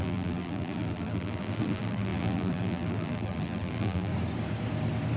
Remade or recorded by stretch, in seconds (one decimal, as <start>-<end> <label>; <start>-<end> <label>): 0.0-4.1 remade; 4.1-5.2 recorded